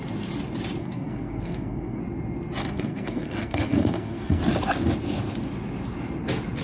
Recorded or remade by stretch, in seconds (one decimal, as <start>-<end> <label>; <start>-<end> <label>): 0.0-0.8 recorded; 0.8-2.0 remade; 2.0-2.6 recorded; 2.6-4.4 remade; 4.4-6.6 recorded